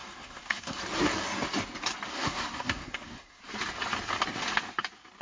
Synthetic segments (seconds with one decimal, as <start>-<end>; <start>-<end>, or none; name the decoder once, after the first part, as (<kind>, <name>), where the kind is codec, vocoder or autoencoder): 0.0-0.8 (codec, SNAC); 2.1-3.4